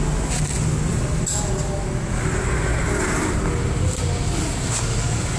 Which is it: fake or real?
real